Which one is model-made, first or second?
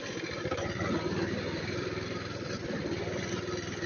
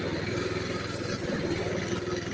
first